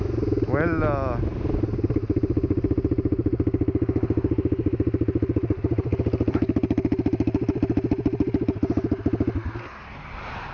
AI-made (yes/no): no